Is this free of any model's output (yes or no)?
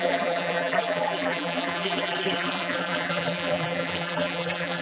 no